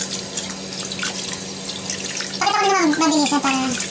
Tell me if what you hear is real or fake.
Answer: real